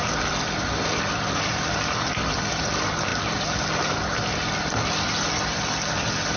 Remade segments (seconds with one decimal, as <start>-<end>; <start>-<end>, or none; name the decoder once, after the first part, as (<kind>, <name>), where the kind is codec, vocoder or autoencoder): none